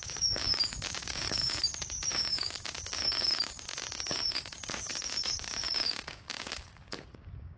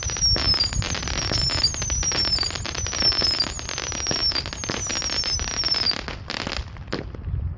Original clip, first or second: second